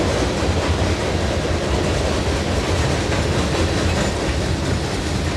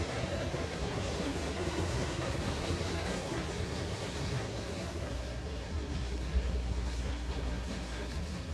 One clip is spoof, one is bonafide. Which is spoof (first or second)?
second